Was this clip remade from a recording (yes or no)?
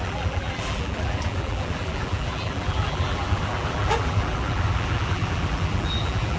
yes